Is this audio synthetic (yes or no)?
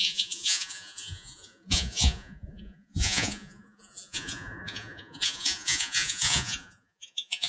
yes